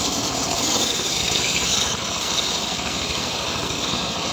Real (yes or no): no